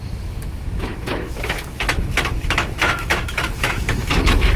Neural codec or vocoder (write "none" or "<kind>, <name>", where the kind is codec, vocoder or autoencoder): autoencoder, DAC-VAE